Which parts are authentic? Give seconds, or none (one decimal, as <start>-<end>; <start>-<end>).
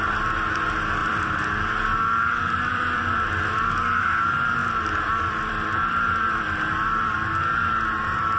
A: 0.0-1.0; 3.0-4.6